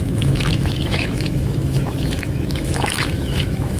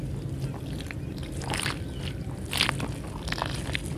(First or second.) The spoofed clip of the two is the first